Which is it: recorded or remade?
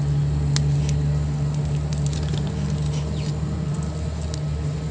recorded